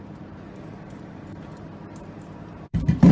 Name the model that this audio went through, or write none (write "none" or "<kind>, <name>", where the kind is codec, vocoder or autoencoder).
vocoder, BigVGAN v2